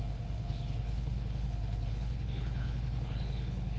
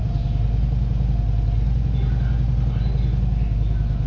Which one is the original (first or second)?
second